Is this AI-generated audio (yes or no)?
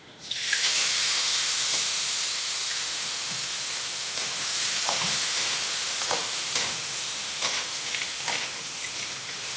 yes